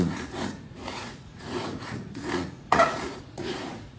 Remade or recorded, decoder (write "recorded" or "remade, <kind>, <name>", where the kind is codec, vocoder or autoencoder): remade, vocoder, Vocos